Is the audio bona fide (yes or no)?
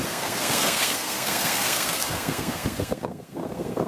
no